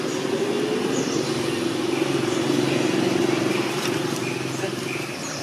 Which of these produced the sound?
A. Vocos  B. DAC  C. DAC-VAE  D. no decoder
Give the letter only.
D